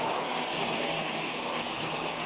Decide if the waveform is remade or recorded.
remade